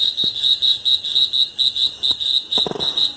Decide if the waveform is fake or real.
real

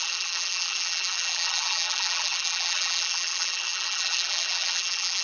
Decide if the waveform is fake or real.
fake